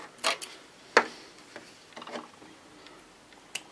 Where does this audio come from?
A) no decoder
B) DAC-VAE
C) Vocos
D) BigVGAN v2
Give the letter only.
A